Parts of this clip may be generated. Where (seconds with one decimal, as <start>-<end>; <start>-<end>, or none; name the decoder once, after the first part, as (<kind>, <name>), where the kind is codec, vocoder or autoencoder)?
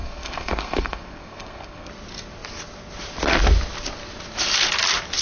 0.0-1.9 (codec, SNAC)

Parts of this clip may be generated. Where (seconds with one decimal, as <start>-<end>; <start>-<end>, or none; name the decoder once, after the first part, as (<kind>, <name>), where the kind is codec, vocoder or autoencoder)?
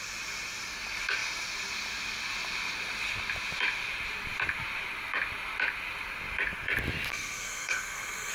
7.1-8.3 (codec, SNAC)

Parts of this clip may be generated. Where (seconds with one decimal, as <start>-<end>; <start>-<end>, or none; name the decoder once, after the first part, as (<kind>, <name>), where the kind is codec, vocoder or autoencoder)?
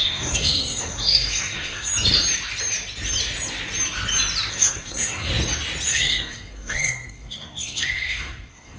0.0-1.9 (codec, SNAC); 4.5-5.3; 5.9-8.8